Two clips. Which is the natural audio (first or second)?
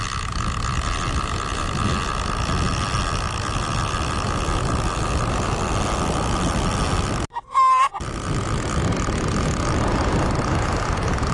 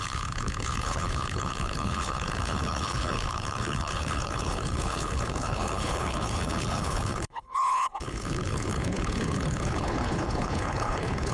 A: first